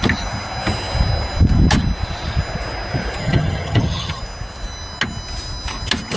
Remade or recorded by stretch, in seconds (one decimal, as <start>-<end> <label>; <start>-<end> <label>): 0.0-3.2 recorded; 3.2-4.2 remade; 4.2-6.2 recorded